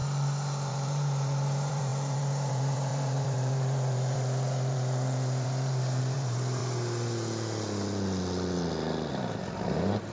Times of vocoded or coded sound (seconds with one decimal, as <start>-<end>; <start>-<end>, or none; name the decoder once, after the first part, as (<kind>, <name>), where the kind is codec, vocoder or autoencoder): 0.7-6.6 (vocoder, BigVGAN v2); 9.1-10.1